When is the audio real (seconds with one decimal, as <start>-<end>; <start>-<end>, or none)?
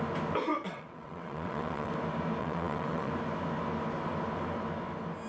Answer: 0.0-0.5; 1.9-2.4; 3.1-5.3